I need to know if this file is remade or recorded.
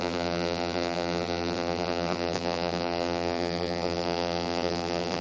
remade